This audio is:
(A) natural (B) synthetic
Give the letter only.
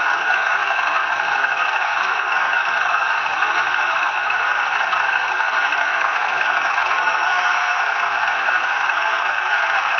B